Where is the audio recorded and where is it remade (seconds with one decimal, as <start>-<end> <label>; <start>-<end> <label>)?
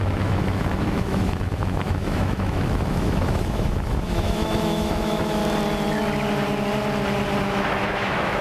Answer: 0.0-5.4 remade; 5.4-7.4 recorded; 7.4-8.4 remade